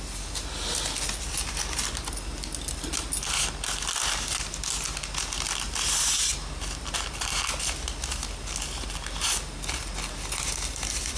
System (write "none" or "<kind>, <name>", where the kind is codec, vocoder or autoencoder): none